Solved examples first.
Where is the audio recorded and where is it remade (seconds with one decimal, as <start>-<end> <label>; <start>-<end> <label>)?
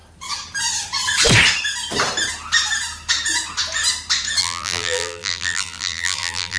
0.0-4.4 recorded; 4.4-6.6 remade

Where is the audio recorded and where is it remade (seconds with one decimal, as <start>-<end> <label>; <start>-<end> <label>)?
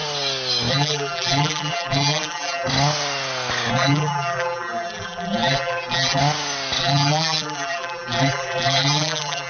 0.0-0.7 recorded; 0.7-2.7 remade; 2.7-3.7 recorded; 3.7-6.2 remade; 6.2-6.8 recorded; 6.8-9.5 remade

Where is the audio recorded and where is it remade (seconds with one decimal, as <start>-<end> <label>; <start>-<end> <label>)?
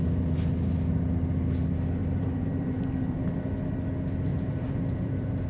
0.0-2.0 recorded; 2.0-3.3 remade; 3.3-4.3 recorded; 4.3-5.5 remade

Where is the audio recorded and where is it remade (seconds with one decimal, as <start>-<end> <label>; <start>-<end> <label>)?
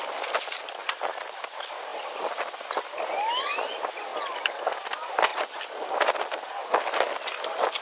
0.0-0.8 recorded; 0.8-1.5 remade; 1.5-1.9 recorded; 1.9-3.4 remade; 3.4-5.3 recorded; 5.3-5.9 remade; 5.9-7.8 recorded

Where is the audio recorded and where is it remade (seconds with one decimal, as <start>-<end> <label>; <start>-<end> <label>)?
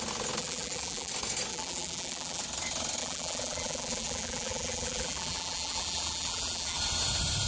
0.0-0.4 recorded; 0.4-1.1 remade; 1.1-1.5 recorded; 1.5-2.4 remade; 2.4-3.0 recorded; 3.0-6.8 remade; 6.8-7.5 recorded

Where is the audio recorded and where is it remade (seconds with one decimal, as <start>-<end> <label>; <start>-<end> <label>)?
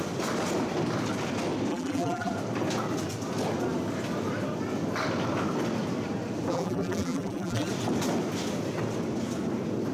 0.0-1.7 recorded; 1.7-2.3 remade; 2.3-6.5 recorded; 6.5-7.7 remade; 7.7-9.9 recorded